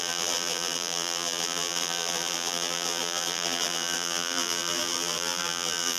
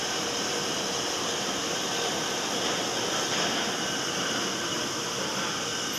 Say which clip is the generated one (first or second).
first